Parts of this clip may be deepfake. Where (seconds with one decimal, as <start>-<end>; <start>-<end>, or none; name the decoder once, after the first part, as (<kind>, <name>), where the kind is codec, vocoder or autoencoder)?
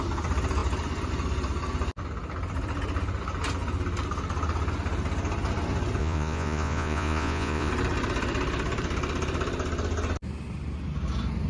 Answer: 6.0-7.7 (vocoder, Vocos)